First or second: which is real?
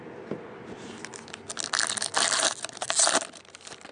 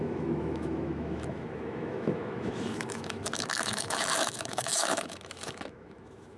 first